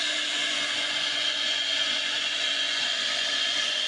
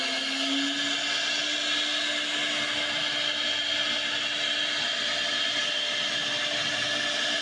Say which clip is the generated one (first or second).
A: first